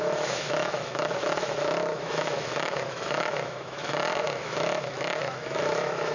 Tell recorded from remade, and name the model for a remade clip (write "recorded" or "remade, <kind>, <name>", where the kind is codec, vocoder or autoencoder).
remade, autoencoder, DAC-VAE